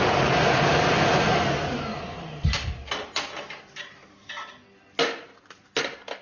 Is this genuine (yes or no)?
yes